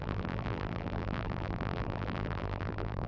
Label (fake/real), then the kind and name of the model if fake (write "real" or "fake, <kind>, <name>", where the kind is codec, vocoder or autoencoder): fake, vocoder, BigVGAN v2